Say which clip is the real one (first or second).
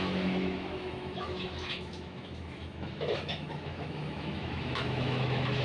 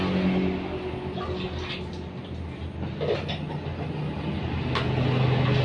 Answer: second